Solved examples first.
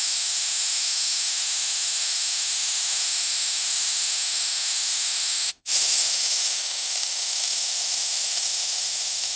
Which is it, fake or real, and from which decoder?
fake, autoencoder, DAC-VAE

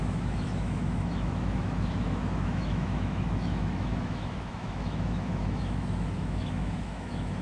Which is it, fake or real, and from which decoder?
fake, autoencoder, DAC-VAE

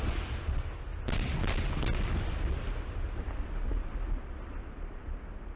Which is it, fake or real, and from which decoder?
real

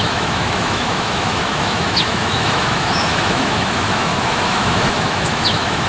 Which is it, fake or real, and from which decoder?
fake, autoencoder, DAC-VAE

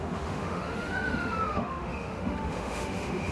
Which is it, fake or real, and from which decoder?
fake, autoencoder, DAC-VAE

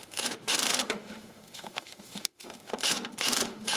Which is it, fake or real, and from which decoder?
fake, autoencoder, DAC-VAE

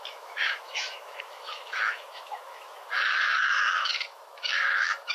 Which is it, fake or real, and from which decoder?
fake, autoencoder, DAC-VAE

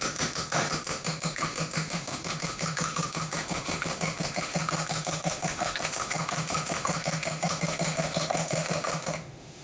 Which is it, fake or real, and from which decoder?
fake, autoencoder, DAC-VAE